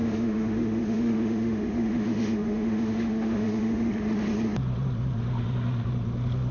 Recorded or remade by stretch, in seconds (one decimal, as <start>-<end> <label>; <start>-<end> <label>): 0.0-3.9 remade; 3.9-6.5 recorded